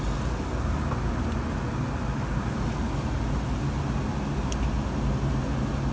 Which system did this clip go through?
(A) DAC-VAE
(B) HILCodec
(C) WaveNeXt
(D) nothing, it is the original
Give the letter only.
D